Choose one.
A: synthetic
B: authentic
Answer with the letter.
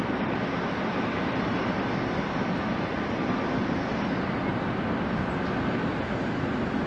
B